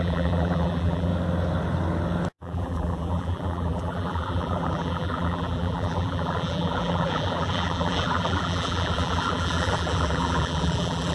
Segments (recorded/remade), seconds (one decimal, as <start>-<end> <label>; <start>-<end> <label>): 0.0-1.1 remade; 1.1-2.3 recorded; 2.3-11.1 remade